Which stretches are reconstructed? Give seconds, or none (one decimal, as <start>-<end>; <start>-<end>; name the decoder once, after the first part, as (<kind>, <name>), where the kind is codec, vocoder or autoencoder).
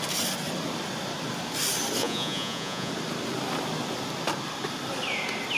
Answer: 2.0-2.9 (vocoder, Vocos)